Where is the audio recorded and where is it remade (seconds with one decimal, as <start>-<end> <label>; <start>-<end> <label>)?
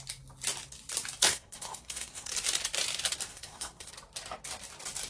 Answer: 0.0-1.3 recorded; 1.3-2.3 remade; 2.3-3.3 recorded; 3.3-3.9 remade; 3.9-5.1 recorded